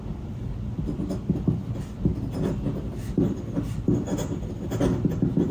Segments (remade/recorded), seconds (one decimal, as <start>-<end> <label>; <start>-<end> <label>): 0.0-5.5 recorded